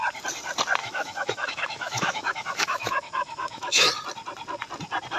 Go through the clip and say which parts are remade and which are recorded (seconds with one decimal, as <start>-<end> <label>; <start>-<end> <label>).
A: 0.0-0.8 recorded; 0.8-3.9 remade; 3.9-5.2 recorded

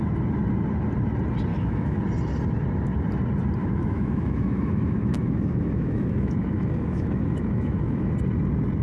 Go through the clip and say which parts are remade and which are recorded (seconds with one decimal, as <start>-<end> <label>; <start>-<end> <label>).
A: 0.0-1.5 recorded; 1.5-2.0 remade; 2.0-3.6 recorded; 3.6-8.1 remade; 8.1-8.8 recorded

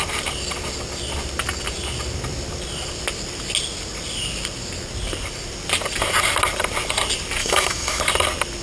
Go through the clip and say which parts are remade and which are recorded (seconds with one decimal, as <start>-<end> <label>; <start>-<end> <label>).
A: 0.0-7.4 recorded; 7.4-8.0 remade; 8.0-8.6 recorded